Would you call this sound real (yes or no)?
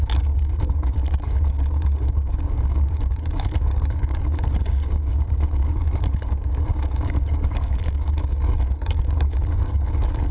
no